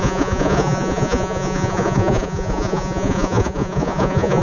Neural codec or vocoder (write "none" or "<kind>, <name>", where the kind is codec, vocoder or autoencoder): vocoder, Vocos